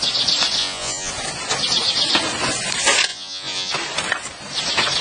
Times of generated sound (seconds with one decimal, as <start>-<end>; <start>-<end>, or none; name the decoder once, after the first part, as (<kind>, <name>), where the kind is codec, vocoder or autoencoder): 0.6-1.1 (vocoder, Vocos); 3.1-3.7